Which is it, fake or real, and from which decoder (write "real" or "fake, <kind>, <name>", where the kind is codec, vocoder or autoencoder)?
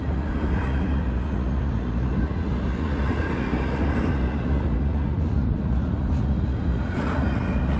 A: fake, vocoder, Vocos